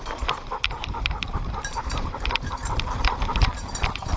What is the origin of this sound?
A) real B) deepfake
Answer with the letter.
B